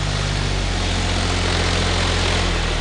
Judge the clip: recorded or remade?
recorded